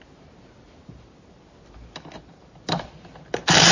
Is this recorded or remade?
recorded